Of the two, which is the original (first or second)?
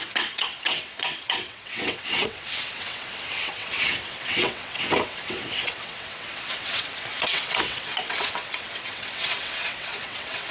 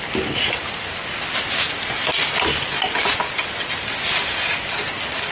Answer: second